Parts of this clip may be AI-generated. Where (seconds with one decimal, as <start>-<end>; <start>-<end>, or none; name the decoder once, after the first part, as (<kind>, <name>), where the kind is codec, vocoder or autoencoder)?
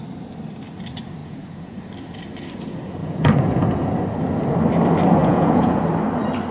1.2-1.8 (vocoder, Vocos); 3.0-4.0; 5.2-5.8